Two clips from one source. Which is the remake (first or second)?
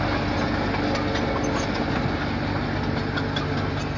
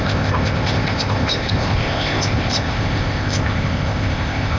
second